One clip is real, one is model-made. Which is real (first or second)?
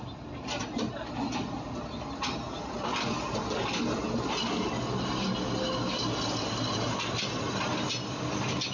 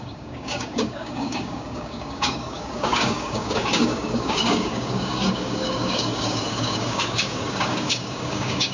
first